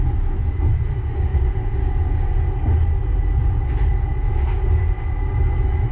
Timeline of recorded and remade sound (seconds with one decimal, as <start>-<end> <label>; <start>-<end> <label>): 0.0-5.9 recorded